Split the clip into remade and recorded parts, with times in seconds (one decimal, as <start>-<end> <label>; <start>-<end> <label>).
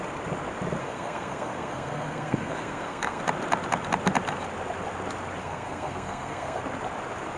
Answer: 0.0-0.8 recorded; 0.8-3.2 remade; 3.2-5.4 recorded; 5.4-6.6 remade; 6.6-7.4 recorded